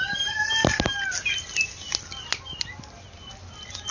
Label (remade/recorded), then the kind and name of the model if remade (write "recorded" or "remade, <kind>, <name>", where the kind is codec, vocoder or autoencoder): recorded